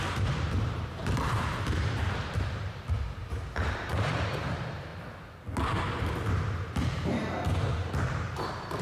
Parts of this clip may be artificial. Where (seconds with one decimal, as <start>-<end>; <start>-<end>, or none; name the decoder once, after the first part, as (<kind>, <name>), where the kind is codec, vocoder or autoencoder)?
0.0-4.9 (vocoder, BigVGAN v2); 5.8-8.8

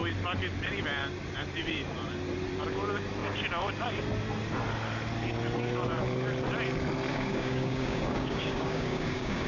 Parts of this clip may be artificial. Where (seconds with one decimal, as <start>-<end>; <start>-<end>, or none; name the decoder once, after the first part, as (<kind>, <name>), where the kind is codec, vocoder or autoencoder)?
7.1-9.5 (codec, DAC)

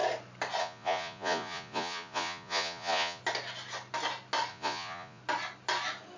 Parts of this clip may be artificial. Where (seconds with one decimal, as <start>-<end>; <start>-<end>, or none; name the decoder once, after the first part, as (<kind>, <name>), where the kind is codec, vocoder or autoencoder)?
0.6-3.2 (vocoder, Vocos); 4.5-5.2

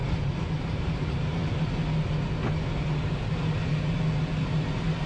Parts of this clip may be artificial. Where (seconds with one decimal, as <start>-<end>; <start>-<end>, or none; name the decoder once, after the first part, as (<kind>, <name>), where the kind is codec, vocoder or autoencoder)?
0.0-1.4 (vocoder, BigVGAN v2); 4.4-5.1

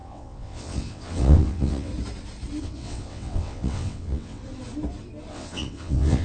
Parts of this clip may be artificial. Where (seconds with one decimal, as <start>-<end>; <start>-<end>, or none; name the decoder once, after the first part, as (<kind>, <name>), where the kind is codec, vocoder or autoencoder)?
0.0-1.9 (vocoder, WaveNeXt); 2.6-4.4; 5.3-6.2

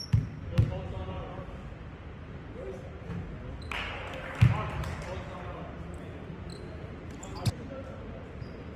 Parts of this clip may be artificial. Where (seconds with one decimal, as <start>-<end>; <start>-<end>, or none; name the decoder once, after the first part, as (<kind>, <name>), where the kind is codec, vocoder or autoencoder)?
none

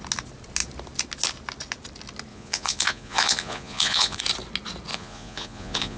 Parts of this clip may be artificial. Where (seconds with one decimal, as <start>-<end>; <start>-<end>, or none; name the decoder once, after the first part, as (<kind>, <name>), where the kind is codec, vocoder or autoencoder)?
2.3-4.2 (vocoder, Vocos); 4.9-6.0